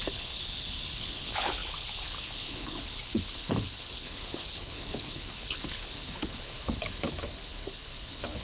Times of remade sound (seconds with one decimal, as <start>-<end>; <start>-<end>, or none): 0.0-8.4